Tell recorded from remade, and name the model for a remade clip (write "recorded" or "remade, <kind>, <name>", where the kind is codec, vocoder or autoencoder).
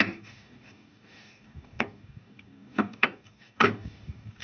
remade, codec, DAC